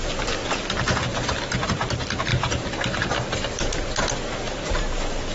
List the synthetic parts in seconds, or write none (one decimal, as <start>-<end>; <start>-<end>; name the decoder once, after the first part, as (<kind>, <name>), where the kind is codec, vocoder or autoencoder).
0.0-1.1 (vocoder, BigVGAN v2); 1.7-2.3; 4.5-5.3